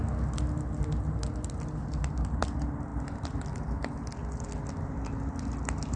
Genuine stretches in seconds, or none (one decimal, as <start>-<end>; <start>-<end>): 0.0-6.0